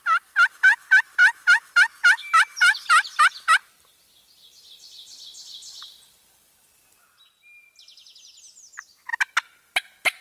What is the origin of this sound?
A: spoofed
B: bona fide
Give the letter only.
B